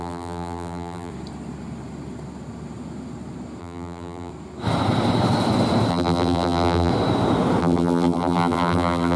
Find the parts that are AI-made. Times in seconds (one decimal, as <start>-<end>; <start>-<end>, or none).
0.0-1.1; 3.6-4.3; 5.9-6.9; 7.6-9.2